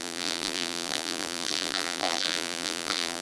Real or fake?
fake